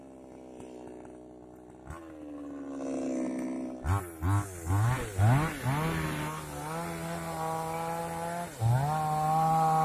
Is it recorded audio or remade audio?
recorded